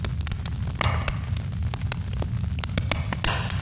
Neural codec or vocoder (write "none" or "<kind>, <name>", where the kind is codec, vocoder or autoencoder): none